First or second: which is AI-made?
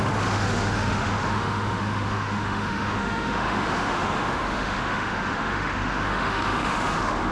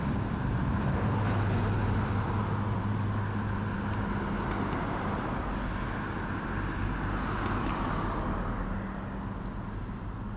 first